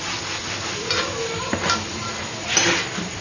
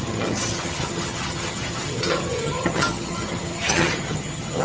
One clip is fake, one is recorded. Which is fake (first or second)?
second